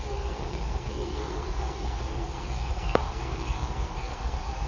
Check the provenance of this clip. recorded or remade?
remade